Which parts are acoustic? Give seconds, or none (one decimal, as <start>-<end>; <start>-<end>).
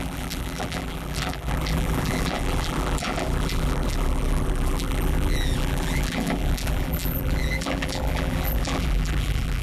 none